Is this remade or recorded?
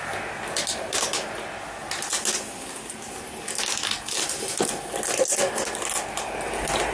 recorded